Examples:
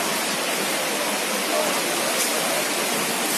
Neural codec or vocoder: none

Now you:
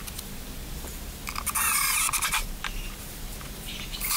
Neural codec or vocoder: none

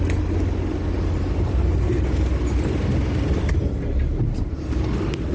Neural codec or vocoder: none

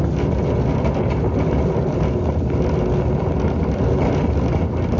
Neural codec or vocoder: none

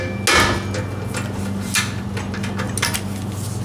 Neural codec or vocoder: none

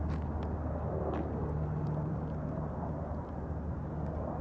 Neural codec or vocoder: none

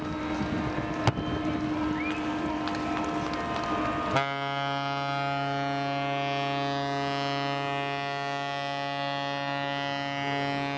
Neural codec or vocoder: none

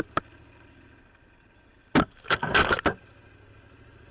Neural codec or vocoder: none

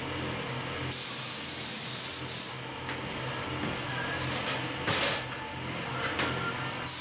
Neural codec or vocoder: none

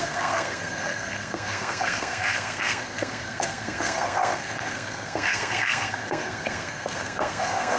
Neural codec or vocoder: codec, SNAC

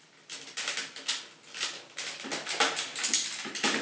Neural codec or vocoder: none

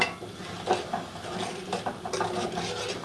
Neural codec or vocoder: none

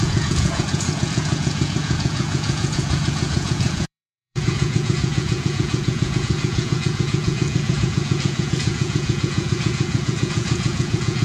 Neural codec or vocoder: vocoder, Vocos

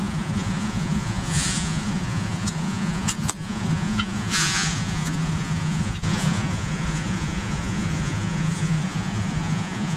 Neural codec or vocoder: vocoder, Vocos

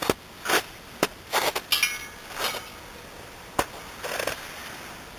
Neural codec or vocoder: none